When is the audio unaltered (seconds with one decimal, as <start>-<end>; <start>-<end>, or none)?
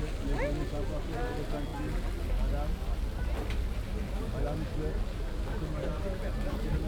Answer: 0.0-6.9